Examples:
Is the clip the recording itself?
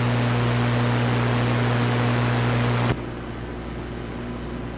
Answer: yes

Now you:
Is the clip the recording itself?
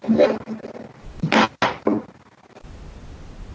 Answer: yes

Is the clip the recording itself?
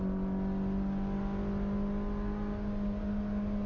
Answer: yes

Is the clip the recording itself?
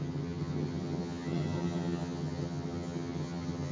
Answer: no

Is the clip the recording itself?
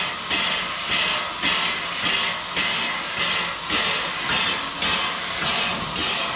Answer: yes